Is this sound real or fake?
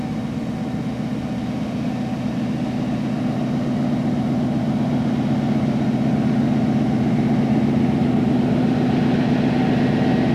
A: real